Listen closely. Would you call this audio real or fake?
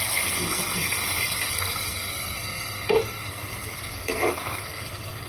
fake